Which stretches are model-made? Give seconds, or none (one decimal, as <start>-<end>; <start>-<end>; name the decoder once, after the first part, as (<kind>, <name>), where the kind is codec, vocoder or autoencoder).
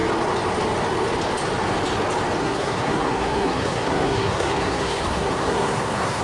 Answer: 2.4-6.2 (codec, SNAC)